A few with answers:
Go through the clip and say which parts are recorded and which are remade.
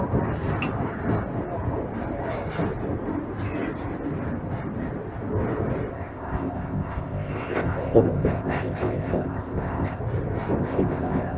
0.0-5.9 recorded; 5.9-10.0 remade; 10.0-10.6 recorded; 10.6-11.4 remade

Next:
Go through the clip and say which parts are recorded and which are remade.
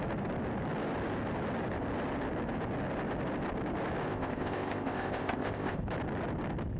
0.0-4.1 recorded; 4.1-5.8 remade; 5.8-6.8 recorded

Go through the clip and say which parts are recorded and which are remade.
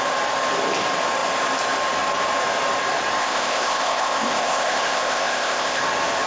0.0-3.2 recorded; 3.2-5.8 remade; 5.8-6.3 recorded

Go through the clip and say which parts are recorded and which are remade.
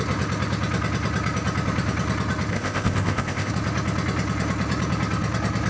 0.0-2.5 recorded; 2.5-3.5 remade; 3.5-5.7 recorded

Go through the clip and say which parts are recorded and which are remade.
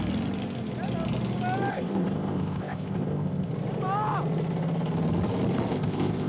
0.0-1.7 recorded; 1.7-3.5 remade; 3.5-5.7 recorded; 5.7-6.3 remade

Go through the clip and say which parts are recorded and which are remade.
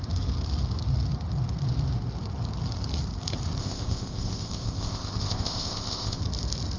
0.0-3.6 recorded; 3.6-6.2 remade; 6.2-6.8 recorded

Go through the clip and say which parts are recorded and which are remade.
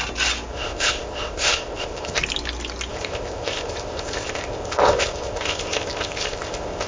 0.0-0.5 recorded; 0.5-2.2 remade; 2.2-2.9 recorded; 2.9-6.9 remade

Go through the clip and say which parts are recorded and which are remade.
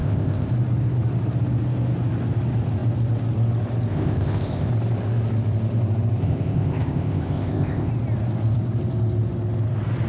0.0-0.5 remade; 0.5-3.9 recorded; 3.9-4.7 remade; 4.7-6.2 recorded; 6.2-7.9 remade; 7.9-10.1 recorded